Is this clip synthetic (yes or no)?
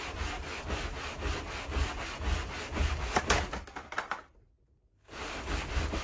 no